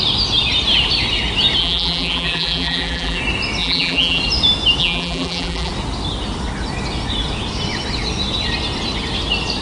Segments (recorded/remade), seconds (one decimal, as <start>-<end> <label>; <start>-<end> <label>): 0.0-1.6 recorded; 1.6-3.2 remade; 3.2-3.6 recorded; 3.6-4.2 remade; 4.2-4.8 recorded; 4.8-5.7 remade; 5.7-9.6 recorded